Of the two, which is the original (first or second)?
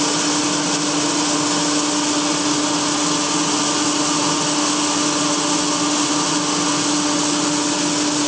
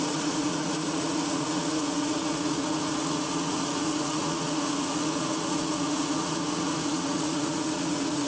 first